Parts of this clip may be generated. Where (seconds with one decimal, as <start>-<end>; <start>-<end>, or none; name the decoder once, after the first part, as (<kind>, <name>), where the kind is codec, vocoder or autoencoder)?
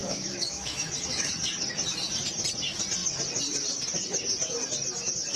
0.0-1.3 (autoencoder, DAC-VAE)